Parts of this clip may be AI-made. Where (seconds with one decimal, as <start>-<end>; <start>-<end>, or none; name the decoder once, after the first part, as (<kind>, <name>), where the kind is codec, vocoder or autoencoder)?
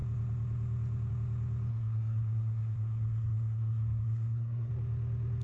1.7-4.7 (codec, SNAC)